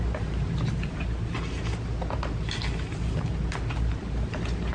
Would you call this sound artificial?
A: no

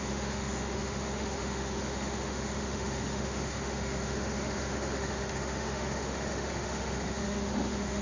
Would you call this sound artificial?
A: yes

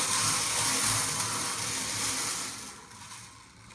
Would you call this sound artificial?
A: no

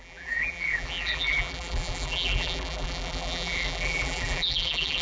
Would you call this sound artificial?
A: yes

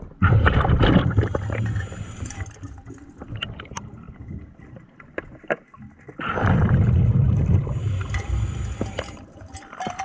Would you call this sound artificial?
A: yes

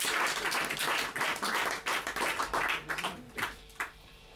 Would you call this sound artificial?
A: yes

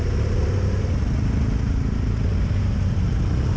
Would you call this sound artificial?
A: no